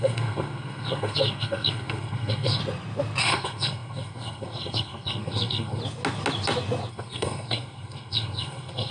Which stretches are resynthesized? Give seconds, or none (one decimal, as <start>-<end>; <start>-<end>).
0.0-2.6; 3.2-5.8; 6.9-8.9